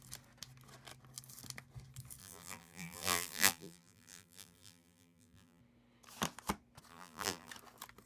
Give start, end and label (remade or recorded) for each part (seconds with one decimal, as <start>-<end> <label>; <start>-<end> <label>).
0.0-2.2 recorded; 2.2-5.6 remade; 5.6-6.9 recorded; 6.9-7.5 remade; 7.5-8.1 recorded